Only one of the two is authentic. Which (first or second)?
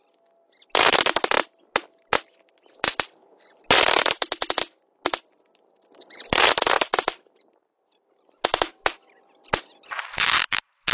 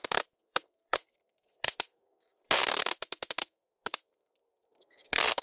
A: first